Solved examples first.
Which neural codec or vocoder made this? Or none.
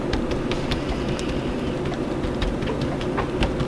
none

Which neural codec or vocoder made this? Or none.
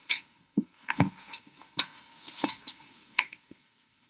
codec, SNAC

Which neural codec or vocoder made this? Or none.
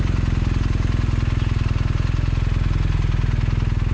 none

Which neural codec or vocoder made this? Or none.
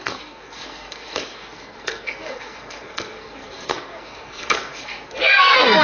codec, SNAC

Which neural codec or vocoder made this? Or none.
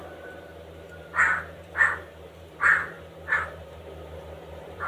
vocoder, BigVGAN v2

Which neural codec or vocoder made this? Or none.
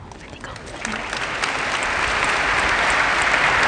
none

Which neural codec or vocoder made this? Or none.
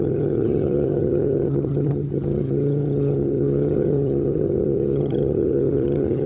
vocoder, HiFi-GAN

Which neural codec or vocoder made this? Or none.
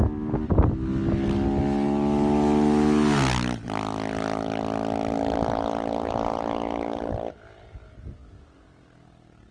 none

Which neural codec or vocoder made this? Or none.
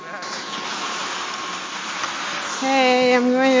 none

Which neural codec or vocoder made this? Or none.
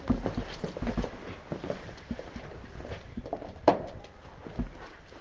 none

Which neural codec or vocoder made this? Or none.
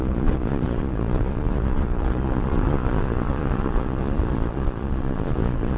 vocoder, Vocos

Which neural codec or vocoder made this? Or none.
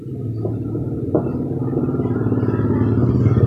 none